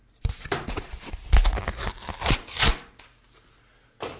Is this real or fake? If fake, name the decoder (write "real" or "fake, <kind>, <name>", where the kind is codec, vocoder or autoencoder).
real